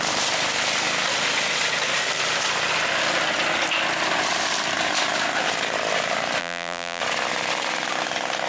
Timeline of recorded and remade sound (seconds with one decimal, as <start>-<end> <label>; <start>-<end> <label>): 0.0-6.4 recorded; 6.4-7.0 remade; 7.0-8.5 recorded